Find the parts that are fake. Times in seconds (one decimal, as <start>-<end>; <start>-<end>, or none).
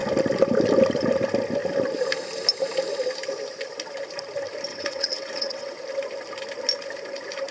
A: 4.7-5.7